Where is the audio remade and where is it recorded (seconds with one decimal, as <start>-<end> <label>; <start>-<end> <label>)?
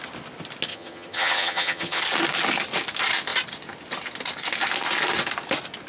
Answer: 0.0-0.7 recorded; 0.7-2.0 remade; 2.0-5.9 recorded